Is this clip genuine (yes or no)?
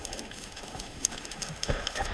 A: no